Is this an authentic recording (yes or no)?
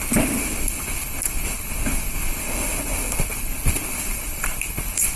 no